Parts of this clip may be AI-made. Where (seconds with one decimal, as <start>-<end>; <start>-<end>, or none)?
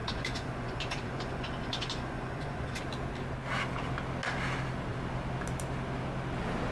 0.0-2.8